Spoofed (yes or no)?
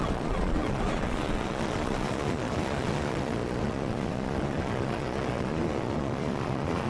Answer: yes